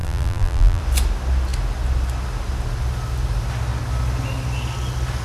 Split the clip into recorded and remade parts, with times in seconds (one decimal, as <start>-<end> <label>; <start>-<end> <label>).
0.0-0.8 remade; 0.8-5.2 recorded